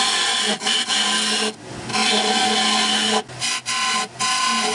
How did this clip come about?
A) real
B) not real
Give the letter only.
A